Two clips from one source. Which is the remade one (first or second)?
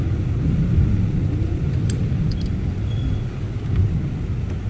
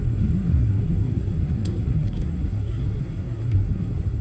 second